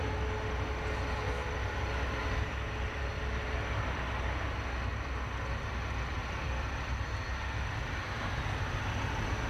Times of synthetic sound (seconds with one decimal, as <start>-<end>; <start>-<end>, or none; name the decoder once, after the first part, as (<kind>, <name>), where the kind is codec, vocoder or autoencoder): 6.2-7.2 (vocoder, BigVGAN v2)